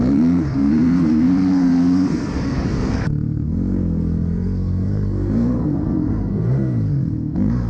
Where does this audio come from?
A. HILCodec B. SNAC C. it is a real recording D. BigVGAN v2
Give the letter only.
B